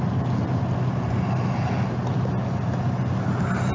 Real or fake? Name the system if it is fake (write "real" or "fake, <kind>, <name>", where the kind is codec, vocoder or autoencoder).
real